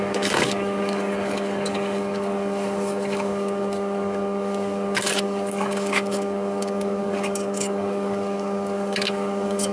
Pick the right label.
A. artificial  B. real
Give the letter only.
A